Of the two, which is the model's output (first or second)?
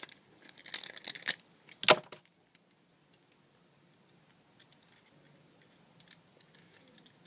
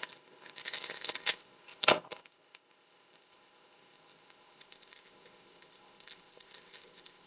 second